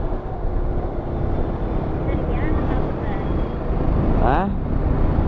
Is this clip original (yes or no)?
yes